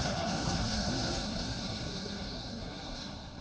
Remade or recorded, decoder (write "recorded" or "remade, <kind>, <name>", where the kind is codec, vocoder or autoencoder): remade, codec, SNAC